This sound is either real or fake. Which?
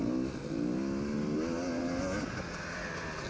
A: real